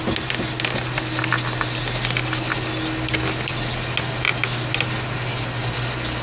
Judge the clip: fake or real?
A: real